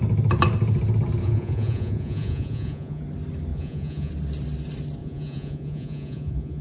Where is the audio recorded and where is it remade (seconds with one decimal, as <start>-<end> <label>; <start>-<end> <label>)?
0.0-1.2 recorded; 1.2-3.0 remade; 3.0-3.5 recorded; 3.5-4.1 remade; 4.1-5.0 recorded; 5.0-6.6 remade

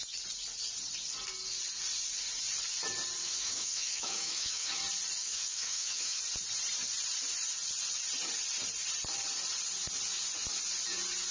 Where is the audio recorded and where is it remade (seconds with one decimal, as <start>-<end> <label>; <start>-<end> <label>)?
0.0-3.2 recorded; 3.2-4.8 remade; 4.8-5.2 recorded; 5.2-6.2 remade; 6.2-11.3 recorded

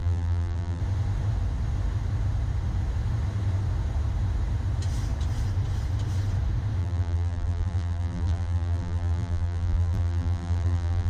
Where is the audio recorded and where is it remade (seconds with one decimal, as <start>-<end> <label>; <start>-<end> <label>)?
0.0-0.8 remade; 0.8-6.8 recorded; 6.8-11.1 remade

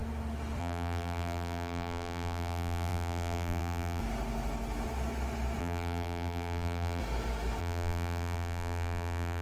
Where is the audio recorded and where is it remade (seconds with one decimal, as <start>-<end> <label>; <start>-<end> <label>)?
0.0-0.6 recorded; 0.6-4.0 remade; 4.0-5.6 recorded; 5.6-7.0 remade; 7.0-7.6 recorded; 7.6-9.4 remade

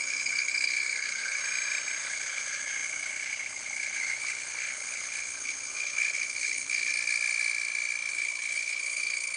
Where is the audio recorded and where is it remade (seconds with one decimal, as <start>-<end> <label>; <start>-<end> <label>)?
0.0-1.4 remade; 1.4-2.0 recorded; 2.0-6.9 remade; 6.9-8.1 recorded; 8.1-9.4 remade

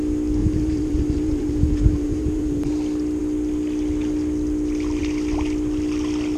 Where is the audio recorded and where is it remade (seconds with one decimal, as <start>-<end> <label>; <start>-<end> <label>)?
0.0-0.4 recorded; 0.4-2.7 remade; 2.7-6.4 recorded

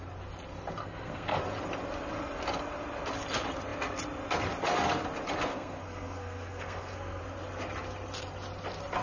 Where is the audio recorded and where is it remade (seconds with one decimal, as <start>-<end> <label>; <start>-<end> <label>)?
0.0-0.8 recorded; 0.8-1.4 remade; 1.4-5.5 recorded; 5.5-7.2 remade; 7.2-9.0 recorded

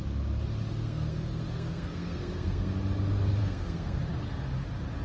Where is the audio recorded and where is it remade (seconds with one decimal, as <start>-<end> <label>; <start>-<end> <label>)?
0.0-0.7 recorded; 0.7-2.7 remade; 2.7-3.4 recorded; 3.4-4.0 remade; 4.0-5.0 recorded